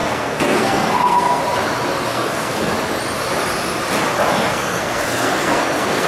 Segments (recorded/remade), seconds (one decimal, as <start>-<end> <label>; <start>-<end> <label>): 0.0-1.4 remade; 1.4-2.1 recorded; 2.1-2.7 remade; 2.7-4.5 recorded; 4.5-6.1 remade